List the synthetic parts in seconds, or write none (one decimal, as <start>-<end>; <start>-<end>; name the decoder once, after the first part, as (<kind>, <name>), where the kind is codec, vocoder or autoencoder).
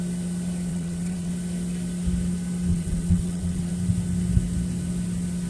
0.7-1.3 (vocoder, WaveNeXt); 2.7-3.7